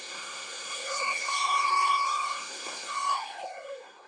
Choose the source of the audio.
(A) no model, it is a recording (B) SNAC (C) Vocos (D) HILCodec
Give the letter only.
B